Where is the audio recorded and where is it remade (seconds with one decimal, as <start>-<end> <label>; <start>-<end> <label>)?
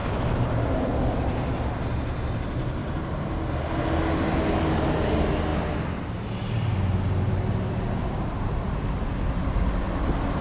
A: 0.0-0.5 remade; 0.5-10.4 recorded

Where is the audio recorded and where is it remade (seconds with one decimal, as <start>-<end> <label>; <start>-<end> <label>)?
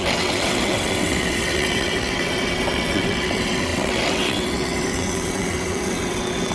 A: 0.0-6.5 remade